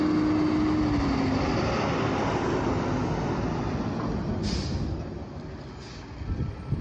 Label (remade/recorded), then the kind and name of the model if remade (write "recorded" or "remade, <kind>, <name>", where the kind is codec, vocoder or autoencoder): recorded